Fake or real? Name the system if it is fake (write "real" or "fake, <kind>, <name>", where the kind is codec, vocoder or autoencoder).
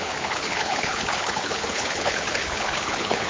fake, codec, HILCodec